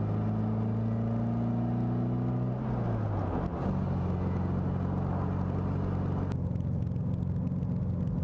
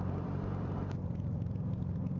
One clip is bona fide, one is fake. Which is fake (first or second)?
second